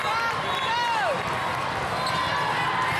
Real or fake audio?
real